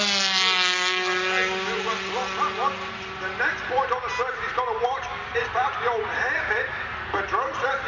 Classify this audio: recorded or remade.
recorded